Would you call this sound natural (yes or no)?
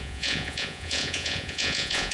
no